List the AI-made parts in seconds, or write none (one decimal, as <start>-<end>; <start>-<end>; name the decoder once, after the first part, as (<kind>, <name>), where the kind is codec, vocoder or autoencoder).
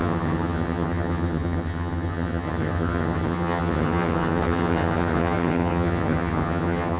0.0-7.0 (vocoder, HiFi-GAN)